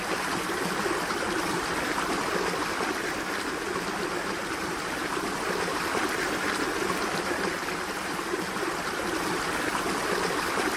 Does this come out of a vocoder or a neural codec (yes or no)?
no